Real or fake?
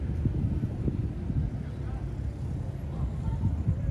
real